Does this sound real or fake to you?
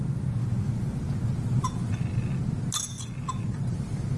real